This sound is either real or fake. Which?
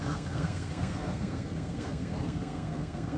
fake